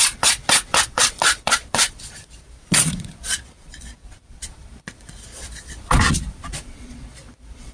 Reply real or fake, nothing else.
fake